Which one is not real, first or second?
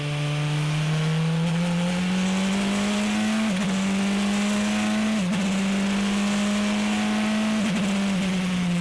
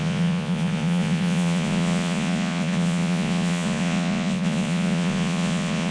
second